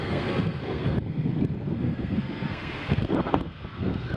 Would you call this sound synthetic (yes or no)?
yes